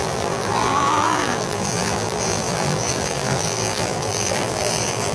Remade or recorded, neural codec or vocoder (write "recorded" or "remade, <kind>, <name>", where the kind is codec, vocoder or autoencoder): remade, vocoder, BigVGAN v2